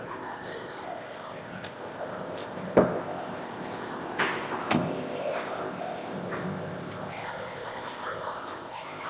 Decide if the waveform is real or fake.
fake